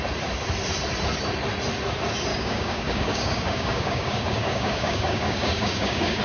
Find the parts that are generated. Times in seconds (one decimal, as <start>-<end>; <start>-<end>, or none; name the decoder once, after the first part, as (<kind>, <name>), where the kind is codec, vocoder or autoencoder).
2.3-6.2 (codec, DAC)